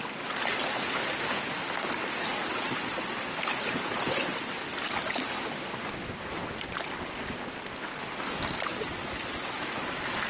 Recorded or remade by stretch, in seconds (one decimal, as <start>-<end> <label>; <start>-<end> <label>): 0.0-3.5 recorded; 3.5-4.8 remade; 4.8-10.3 recorded